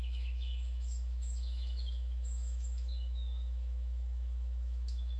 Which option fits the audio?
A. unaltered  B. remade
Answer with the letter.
B